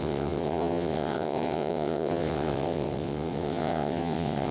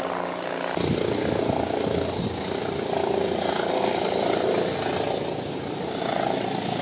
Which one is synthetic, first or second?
first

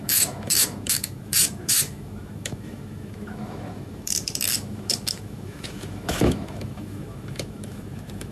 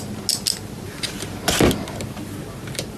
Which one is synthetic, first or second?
first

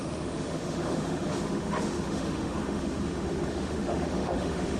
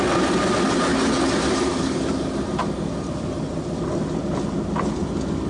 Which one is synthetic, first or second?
first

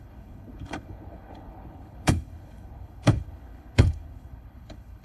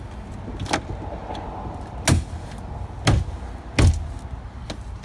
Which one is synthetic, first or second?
first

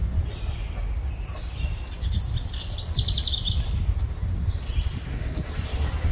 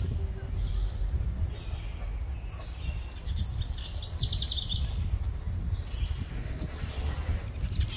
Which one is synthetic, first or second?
first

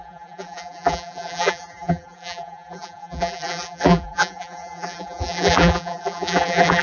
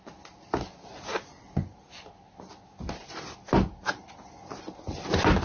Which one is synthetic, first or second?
first